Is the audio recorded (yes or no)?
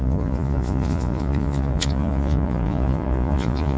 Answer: no